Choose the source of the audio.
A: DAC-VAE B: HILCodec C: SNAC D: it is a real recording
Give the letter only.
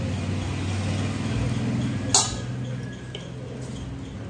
D